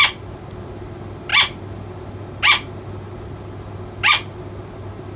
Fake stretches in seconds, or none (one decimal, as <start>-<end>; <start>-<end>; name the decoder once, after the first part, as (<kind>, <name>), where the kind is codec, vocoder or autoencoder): none